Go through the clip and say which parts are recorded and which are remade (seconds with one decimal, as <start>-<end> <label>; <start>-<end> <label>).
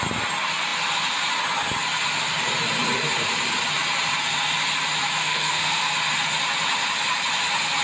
0.0-5.2 recorded; 5.2-5.9 remade; 5.9-7.8 recorded